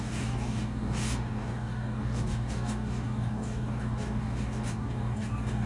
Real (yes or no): no